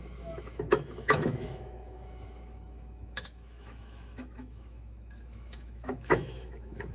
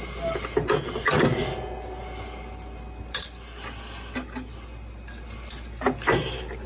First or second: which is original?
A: second